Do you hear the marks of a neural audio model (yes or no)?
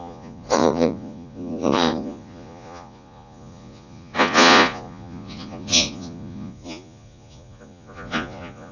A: yes